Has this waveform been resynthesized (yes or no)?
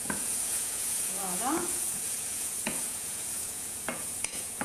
yes